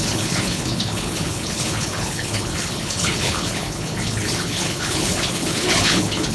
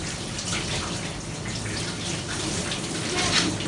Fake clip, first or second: first